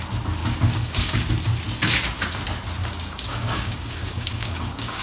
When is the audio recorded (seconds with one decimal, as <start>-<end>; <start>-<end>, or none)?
0.0-0.4; 1.3-2.8